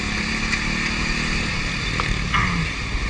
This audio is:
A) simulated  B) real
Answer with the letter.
B